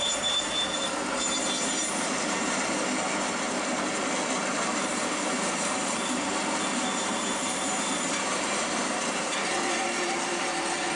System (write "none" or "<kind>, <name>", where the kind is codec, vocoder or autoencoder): vocoder, BigVGAN v2